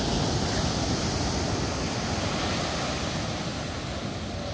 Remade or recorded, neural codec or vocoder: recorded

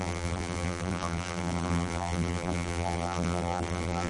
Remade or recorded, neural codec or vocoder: remade, vocoder, BigVGAN v2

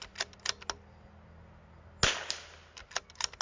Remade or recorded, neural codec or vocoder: recorded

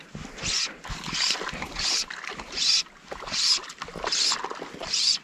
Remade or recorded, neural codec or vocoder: recorded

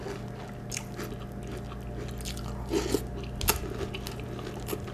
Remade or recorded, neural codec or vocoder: recorded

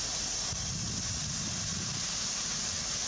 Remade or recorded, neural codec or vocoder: recorded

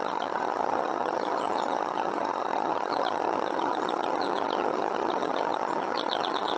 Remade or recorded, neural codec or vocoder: remade, vocoder, HiFi-GAN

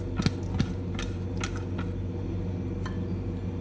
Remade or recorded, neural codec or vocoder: recorded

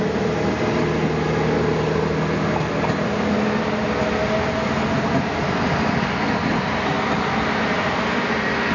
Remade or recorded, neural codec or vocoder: recorded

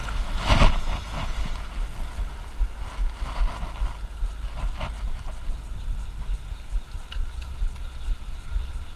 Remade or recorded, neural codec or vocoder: recorded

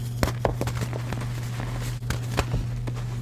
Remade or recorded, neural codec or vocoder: recorded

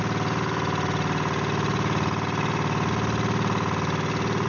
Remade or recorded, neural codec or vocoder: recorded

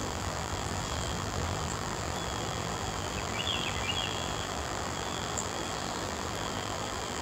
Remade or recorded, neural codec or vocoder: remade, vocoder, BigVGAN v2